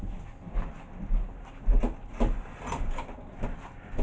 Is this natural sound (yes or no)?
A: yes